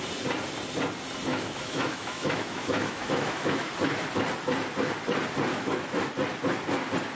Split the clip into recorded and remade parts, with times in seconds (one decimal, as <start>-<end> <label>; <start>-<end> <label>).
0.0-1.3 recorded; 1.3-3.7 remade; 3.7-5.5 recorded; 5.5-6.1 remade; 6.1-7.2 recorded